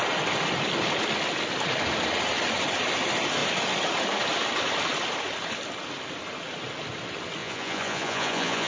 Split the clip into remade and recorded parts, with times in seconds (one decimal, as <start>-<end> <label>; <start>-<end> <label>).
0.0-7.4 recorded; 7.4-8.7 remade